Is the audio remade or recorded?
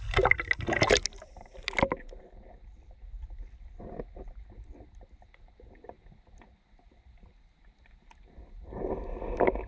recorded